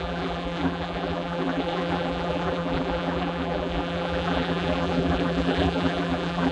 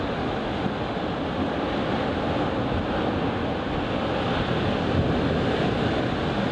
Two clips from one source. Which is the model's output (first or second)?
first